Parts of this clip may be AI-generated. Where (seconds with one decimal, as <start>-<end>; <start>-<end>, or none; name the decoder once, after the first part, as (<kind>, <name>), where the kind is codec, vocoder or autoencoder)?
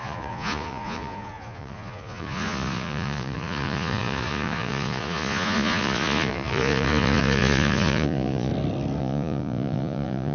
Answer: 0.0-8.5 (vocoder, Vocos); 9.0-10.3